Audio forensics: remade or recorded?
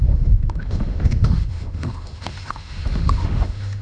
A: remade